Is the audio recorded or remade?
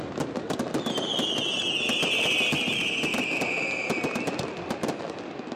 recorded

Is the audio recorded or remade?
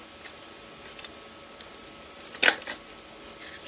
recorded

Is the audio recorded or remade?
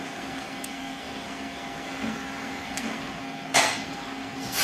remade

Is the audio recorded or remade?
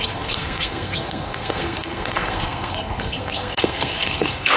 remade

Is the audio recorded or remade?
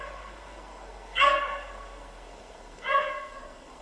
remade